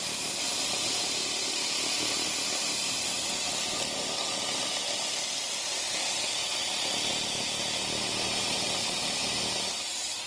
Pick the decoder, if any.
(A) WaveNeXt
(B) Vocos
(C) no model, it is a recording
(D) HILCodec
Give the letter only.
C